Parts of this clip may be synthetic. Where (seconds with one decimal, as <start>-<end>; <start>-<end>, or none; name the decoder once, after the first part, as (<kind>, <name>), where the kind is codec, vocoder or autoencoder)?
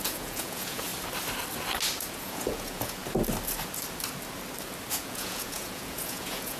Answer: 0.0-0.9 (vocoder, Vocos); 2.1-3.0; 4.9-6.6